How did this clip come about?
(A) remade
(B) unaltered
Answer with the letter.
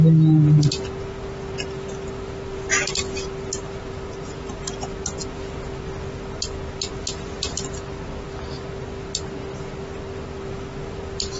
B